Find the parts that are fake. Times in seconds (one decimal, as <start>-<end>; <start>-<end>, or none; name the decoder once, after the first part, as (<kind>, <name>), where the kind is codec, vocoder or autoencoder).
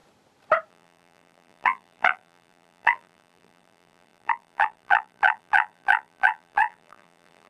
0.7-7.5 (vocoder, BigVGAN v2)